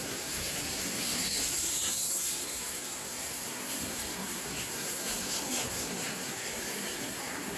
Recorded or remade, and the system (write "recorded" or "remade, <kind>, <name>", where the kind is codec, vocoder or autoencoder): remade, codec, SNAC